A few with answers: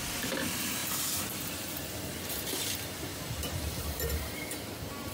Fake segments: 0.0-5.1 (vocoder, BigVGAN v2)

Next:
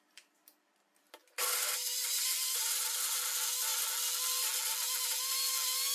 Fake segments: none

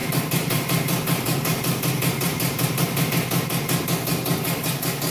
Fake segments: 0.0-3.1 (vocoder, BigVGAN v2)

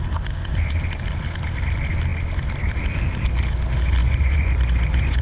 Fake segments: 4.0-5.2 (vocoder, Vocos)

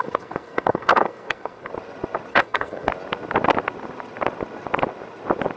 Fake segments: 0.0-1.7 (codec, SNAC); 2.3-2.9

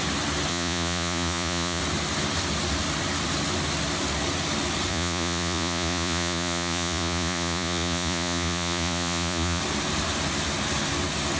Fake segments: 0.5-1.8 (vocoder, Vocos); 4.9-9.6

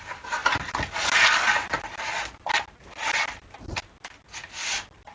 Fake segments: none